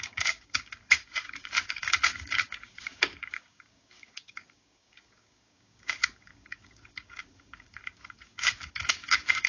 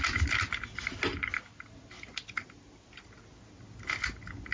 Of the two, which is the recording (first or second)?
second